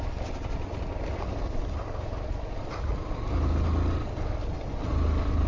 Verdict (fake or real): real